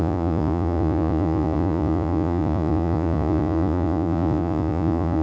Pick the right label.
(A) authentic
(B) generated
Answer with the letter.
B